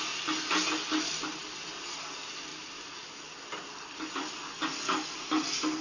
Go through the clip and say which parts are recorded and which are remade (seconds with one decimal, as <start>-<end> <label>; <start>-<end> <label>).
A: 0.0-5.8 recorded